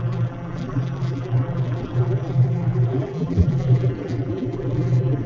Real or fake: fake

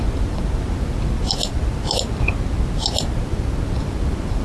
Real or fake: real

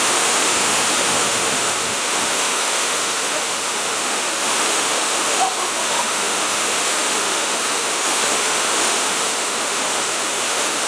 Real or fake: fake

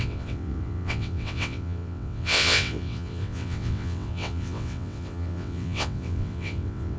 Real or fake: fake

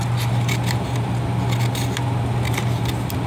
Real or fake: real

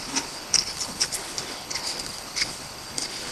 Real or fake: fake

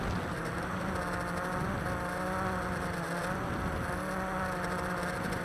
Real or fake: real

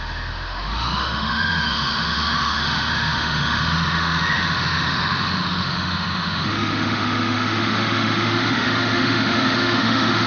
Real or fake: fake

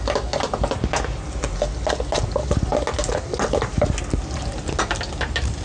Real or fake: real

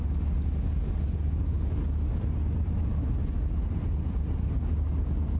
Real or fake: real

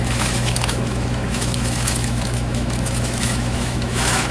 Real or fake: fake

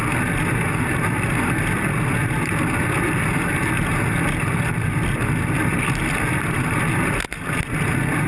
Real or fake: real